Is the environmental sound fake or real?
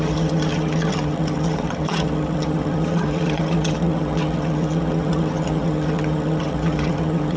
fake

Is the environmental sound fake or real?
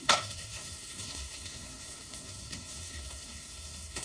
fake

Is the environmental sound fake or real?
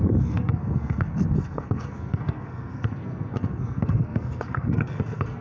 fake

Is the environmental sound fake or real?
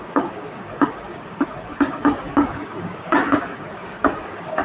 fake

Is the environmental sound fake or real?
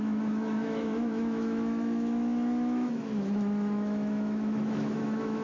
fake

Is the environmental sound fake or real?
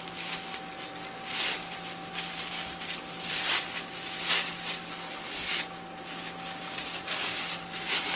real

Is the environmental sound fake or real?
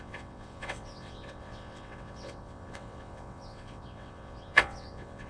fake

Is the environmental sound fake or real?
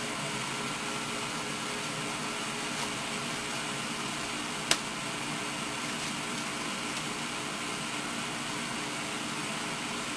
real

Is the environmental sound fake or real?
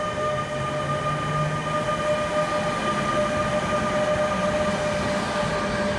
real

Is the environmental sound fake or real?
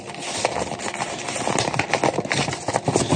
real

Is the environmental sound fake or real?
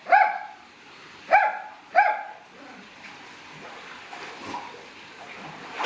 real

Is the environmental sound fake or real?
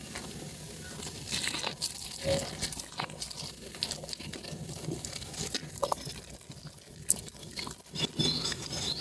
real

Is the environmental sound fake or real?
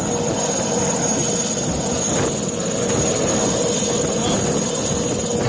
real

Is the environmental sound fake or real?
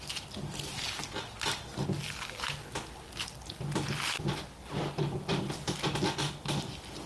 real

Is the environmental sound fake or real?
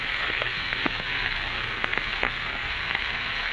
fake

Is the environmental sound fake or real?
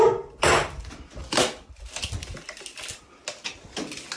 real